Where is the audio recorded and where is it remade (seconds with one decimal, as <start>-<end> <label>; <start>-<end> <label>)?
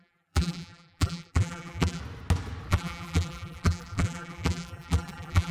0.0-2.0 remade; 2.0-2.7 recorded; 2.7-5.5 remade